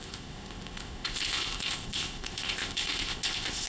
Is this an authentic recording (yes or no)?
no